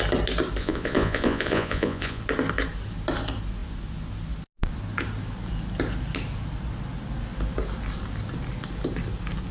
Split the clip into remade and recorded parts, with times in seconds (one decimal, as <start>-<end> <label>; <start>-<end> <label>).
0.0-0.6 recorded; 0.6-2.2 remade; 2.2-9.5 recorded